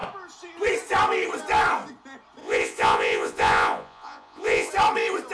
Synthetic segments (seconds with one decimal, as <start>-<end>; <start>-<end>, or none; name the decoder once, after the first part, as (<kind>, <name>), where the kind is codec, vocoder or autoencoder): 2.4-4.7 (vocoder, Vocos)